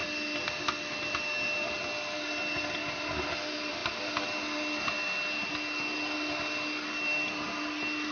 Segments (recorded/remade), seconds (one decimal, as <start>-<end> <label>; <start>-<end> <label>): 0.0-8.1 recorded